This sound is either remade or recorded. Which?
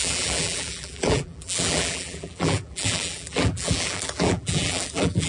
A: remade